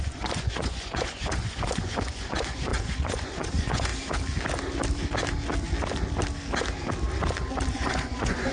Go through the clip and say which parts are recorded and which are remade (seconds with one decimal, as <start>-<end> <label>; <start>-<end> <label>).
0.0-3.9 remade; 3.9-7.7 recorded; 7.7-8.5 remade